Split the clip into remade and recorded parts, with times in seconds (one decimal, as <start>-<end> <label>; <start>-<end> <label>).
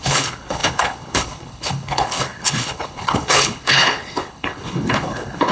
0.0-5.5 remade